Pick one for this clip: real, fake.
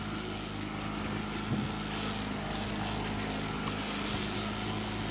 real